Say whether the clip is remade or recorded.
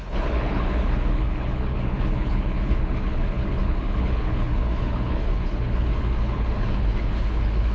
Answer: remade